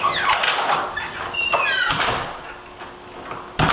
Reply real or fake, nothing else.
real